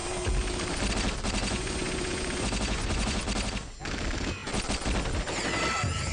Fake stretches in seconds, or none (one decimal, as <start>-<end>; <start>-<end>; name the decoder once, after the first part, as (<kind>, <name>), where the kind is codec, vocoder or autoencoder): 1.4-3.2 (vocoder, Vocos)